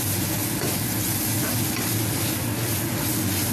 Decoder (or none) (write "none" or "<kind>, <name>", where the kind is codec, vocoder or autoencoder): none